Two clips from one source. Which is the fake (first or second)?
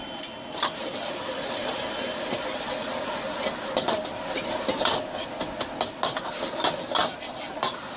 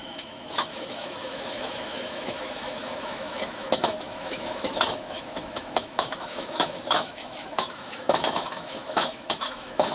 second